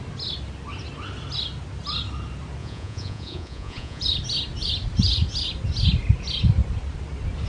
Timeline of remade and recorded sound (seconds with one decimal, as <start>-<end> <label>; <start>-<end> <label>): 0.0-2.6 recorded; 2.6-4.0 remade; 4.0-7.5 recorded